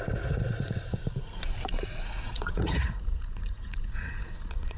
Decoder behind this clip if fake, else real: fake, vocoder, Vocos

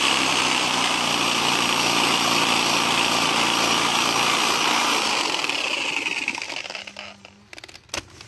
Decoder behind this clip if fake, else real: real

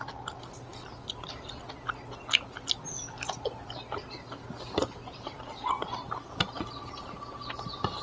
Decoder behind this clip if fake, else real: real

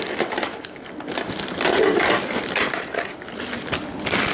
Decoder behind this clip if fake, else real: real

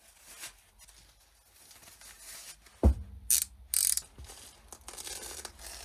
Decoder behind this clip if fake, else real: real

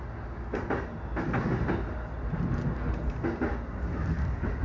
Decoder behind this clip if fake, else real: real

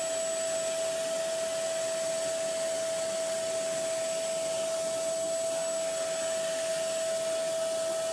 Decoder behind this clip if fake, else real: real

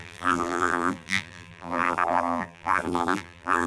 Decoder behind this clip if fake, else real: fake, vocoder, BigVGAN v2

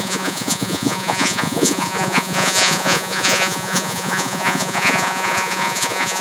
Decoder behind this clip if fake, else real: fake, vocoder, Vocos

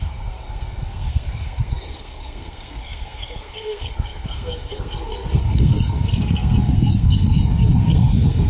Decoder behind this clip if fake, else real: fake, codec, SNAC